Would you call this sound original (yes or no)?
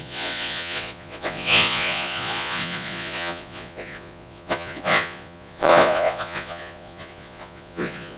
no